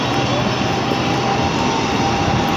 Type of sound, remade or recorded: recorded